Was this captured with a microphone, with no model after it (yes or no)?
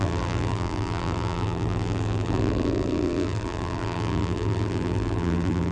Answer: no